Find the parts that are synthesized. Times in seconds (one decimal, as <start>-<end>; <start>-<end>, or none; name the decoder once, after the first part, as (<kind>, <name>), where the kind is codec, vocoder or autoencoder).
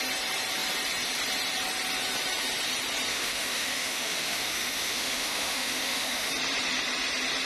3.1-6.3 (autoencoder, DAC-VAE)